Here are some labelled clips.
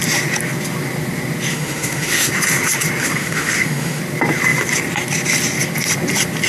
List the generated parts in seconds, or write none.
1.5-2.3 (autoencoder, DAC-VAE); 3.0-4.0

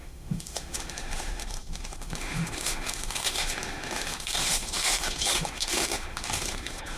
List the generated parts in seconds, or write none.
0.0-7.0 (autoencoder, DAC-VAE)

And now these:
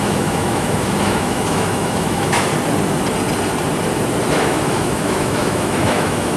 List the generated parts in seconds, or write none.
0.0-2.5 (autoencoder, DAC-VAE); 4.3-6.4

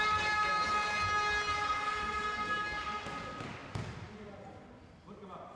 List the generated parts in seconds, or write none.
none